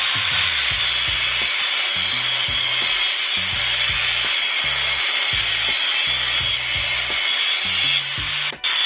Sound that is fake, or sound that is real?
real